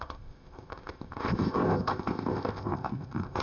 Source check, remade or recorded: remade